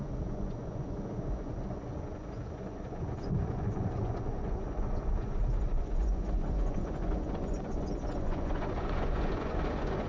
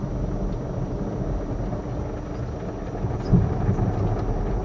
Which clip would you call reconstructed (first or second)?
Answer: first